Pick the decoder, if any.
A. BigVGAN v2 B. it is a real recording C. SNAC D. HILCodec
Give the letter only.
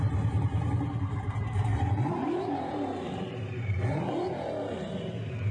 A